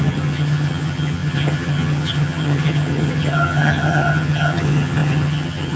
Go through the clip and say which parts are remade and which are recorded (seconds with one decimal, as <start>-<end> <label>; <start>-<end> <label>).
0.0-5.8 remade